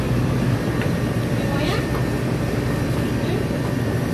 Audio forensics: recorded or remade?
remade